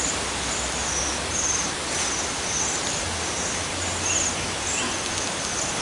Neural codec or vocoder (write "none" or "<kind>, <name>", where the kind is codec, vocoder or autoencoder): none